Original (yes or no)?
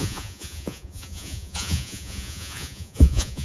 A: no